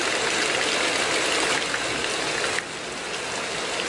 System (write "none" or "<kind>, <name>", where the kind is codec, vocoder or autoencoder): none